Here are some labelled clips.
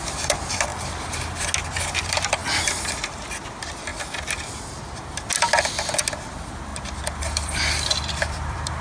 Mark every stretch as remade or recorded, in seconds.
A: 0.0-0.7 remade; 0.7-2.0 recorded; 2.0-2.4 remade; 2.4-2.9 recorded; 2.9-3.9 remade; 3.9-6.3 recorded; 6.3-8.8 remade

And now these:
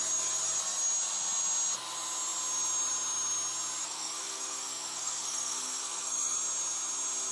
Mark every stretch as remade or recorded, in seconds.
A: 0.0-3.8 recorded; 3.8-6.4 remade; 6.4-7.3 recorded

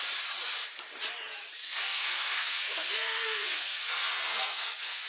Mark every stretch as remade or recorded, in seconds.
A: 0.0-1.6 recorded; 1.6-5.1 remade